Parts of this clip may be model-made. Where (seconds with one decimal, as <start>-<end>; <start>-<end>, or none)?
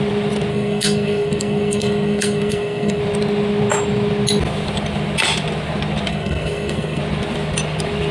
0.5-3.0; 6.1-7.0